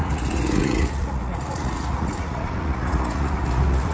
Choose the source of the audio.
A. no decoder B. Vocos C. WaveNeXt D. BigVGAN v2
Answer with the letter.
B